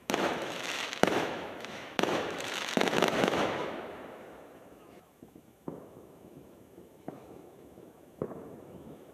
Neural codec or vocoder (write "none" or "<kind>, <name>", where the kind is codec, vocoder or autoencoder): autoencoder, DAC-VAE